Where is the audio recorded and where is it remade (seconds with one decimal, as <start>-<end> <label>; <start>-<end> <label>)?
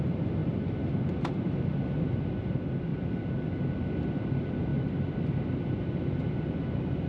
0.0-7.1 recorded